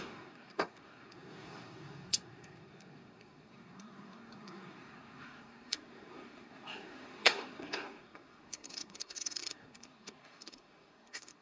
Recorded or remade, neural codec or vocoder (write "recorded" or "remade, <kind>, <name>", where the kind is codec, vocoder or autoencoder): remade, codec, SNAC